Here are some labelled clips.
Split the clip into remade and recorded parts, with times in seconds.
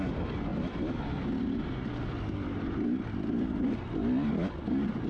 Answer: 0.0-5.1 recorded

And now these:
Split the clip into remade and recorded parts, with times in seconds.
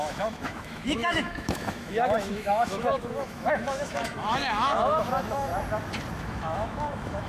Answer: 0.0-5.5 remade; 5.5-6.2 recorded; 6.2-7.3 remade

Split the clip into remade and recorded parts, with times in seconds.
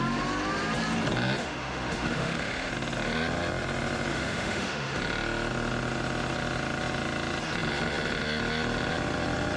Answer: 0.0-1.4 recorded; 1.4-2.7 remade; 2.7-4.1 recorded; 4.1-5.0 remade; 5.0-9.6 recorded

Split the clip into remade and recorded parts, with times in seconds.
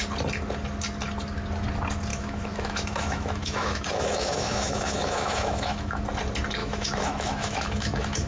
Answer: 0.0-2.1 recorded; 2.1-6.0 remade; 6.0-6.6 recorded; 6.6-8.3 remade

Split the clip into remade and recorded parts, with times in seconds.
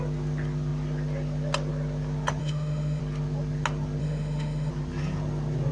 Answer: 0.0-2.4 recorded; 2.4-3.0 remade; 3.0-4.0 recorded; 4.0-4.7 remade; 4.7-5.7 recorded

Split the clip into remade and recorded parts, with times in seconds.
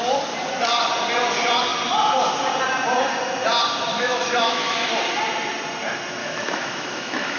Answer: 0.0-3.9 recorded; 3.9-4.9 remade; 4.9-6.2 recorded; 6.2-7.4 remade